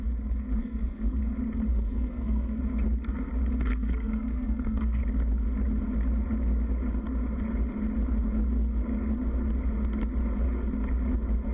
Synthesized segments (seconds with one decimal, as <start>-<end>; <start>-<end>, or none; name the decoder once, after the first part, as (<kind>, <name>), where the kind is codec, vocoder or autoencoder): 0.6-1.2 (codec, SNAC); 1.7-2.6; 3.7-5.0